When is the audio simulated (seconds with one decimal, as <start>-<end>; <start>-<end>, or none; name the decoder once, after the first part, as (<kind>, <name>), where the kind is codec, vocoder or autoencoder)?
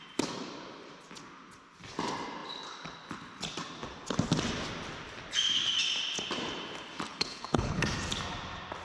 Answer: 7.1-7.8 (codec, HILCodec)